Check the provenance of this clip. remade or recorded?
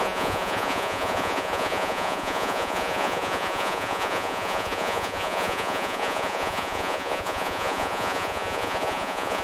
remade